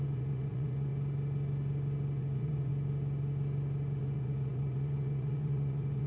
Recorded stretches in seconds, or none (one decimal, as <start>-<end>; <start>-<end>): 0.9-2.2; 2.7-4.0